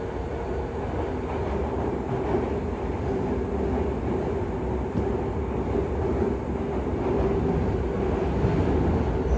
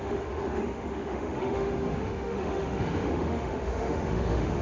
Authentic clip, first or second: first